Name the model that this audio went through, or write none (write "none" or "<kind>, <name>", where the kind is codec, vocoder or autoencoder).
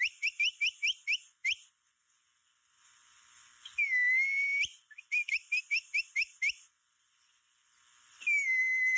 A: none